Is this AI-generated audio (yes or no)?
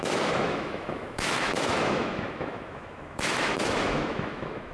yes